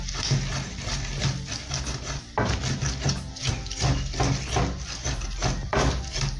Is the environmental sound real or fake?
real